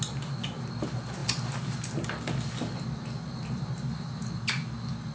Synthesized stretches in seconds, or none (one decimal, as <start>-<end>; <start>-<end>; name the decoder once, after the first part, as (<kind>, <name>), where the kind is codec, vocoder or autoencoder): none

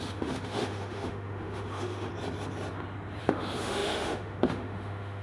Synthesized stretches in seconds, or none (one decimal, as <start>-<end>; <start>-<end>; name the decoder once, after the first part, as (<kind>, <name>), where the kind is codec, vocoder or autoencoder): 0.0-2.1 (autoencoder, DAC-VAE); 3.2-5.2